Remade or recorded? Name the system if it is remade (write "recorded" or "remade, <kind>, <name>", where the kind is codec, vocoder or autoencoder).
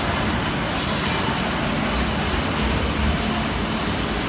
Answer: recorded